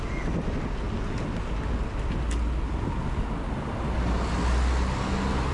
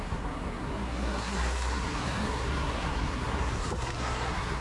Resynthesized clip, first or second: second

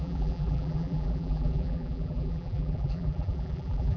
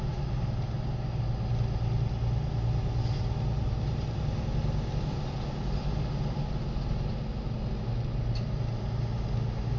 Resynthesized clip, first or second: first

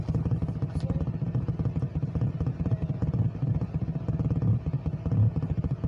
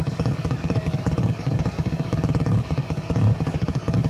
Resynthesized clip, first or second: second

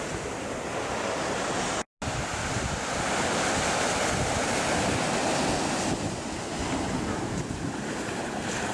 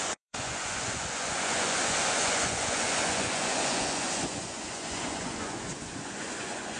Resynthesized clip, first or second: second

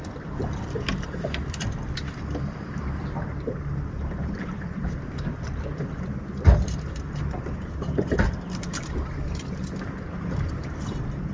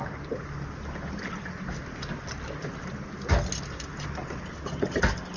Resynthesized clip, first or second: first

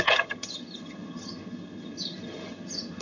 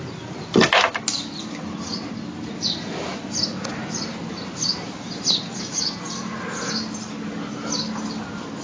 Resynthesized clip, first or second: first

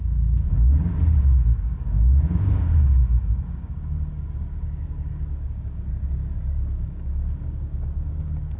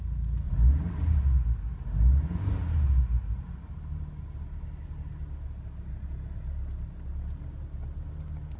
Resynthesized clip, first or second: first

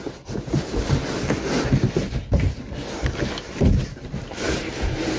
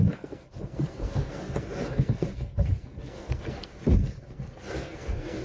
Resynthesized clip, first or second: second